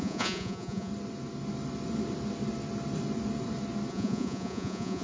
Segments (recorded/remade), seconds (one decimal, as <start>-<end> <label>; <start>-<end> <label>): 0.0-0.9 remade; 0.9-3.9 recorded; 3.9-5.0 remade